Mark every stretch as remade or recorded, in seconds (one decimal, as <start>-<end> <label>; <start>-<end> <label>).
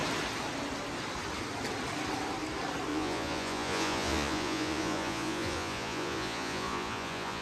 0.0-2.9 recorded; 2.9-7.4 remade